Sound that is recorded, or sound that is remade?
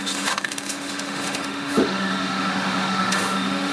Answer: remade